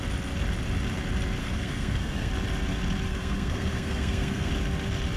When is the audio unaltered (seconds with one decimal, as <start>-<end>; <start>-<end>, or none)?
0.0-1.4; 2.3-3.1; 4.5-5.2